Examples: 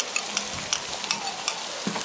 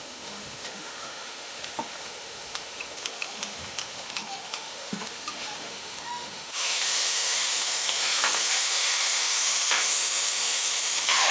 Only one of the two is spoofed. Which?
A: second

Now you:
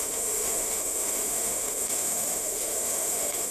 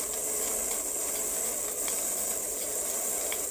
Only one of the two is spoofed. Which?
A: first